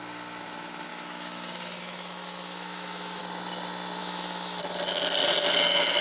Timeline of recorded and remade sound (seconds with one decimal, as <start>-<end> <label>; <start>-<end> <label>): 0.0-0.9 recorded; 0.9-3.2 remade; 3.2-4.0 recorded; 4.0-4.6 remade; 4.6-6.0 recorded